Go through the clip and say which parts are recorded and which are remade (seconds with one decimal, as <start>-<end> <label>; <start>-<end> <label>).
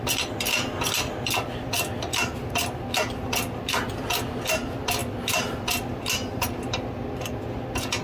0.0-8.0 recorded